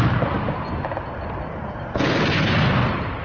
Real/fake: real